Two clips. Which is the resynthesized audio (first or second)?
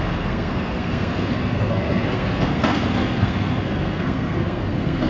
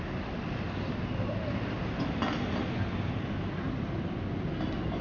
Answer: first